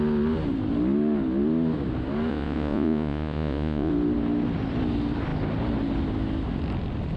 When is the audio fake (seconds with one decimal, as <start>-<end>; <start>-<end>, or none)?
2.3-3.9